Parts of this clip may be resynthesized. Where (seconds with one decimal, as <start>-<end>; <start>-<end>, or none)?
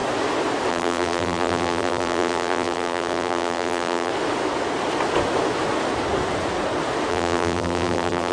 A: 0.7-4.1; 7.1-8.3